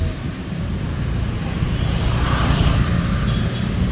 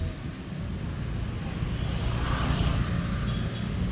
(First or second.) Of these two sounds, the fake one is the first